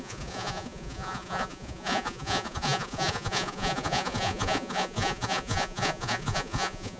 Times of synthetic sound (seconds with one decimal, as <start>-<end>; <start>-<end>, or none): 0.0-7.0